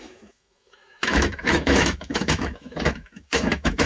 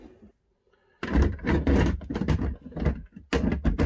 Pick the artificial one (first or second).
first